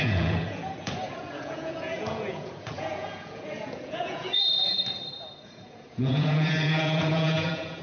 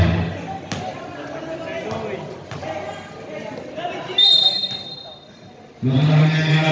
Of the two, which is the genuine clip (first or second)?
second